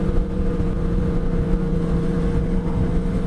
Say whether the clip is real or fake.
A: fake